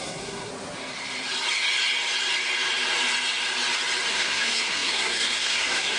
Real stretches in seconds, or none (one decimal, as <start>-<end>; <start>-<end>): 0.5-4.1